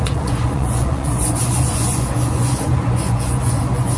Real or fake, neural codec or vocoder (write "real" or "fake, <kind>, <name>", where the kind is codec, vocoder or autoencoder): fake, vocoder, Vocos